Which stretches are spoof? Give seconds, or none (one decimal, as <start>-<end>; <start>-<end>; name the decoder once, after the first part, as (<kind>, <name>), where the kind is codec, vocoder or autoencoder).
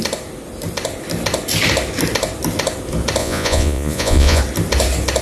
3.2-4.4 (vocoder, Vocos)